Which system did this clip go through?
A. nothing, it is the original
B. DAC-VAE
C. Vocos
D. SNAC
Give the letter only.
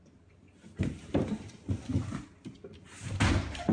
A